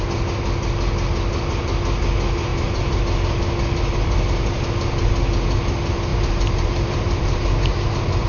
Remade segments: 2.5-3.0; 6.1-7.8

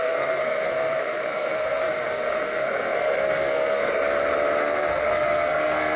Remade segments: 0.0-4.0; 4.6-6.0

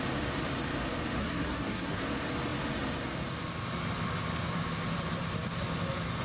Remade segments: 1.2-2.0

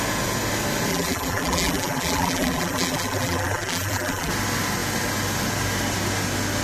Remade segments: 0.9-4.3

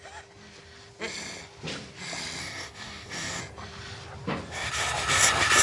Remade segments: 2.4-3.4